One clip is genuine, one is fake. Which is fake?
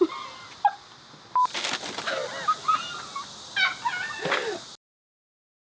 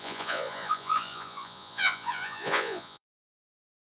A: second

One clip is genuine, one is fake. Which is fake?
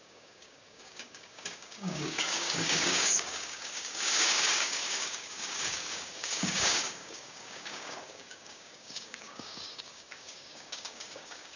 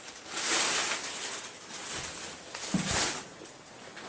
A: first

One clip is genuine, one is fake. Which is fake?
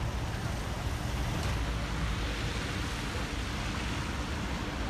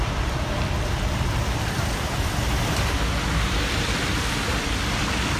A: second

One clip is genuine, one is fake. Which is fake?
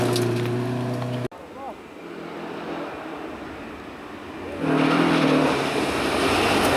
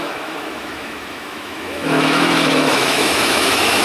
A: second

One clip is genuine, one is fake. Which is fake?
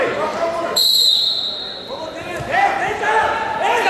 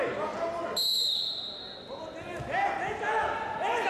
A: first